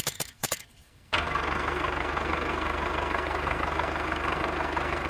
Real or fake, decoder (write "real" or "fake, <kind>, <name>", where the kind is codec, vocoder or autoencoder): fake, codec, SNAC